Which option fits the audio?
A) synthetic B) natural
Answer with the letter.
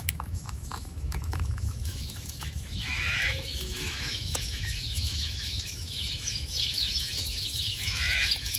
A